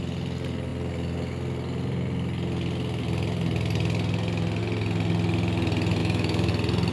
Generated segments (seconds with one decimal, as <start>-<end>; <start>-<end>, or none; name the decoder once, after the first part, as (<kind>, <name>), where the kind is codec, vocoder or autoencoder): 6.0-6.5 (autoencoder, DAC-VAE)